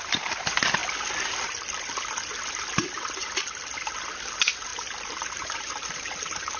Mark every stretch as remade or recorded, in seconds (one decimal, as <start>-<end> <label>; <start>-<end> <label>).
0.0-4.7 recorded; 4.7-6.6 remade